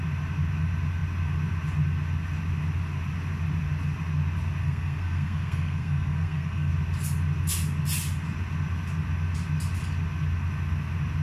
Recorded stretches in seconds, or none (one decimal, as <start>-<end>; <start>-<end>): 0.0-4.6; 6.7-11.2

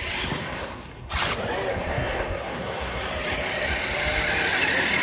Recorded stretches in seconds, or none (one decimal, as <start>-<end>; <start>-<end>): 0.0-0.4; 1.1-1.7; 3.0-5.0

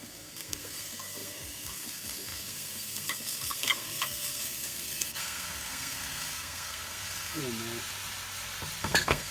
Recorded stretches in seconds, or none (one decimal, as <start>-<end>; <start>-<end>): 7.4-8.8

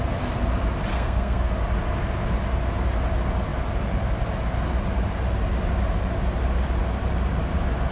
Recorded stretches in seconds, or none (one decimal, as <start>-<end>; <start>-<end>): 0.0-0.9; 1.5-7.9

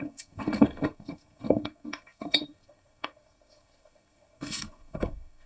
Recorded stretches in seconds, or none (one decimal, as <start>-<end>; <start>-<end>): none

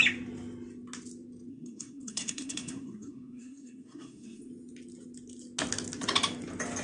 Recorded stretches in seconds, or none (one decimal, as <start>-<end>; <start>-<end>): 0.0-1.5; 4.5-6.8

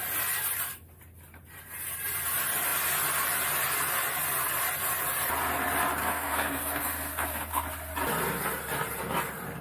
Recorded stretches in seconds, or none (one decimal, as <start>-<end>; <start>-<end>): 0.0-6.0; 7.6-9.6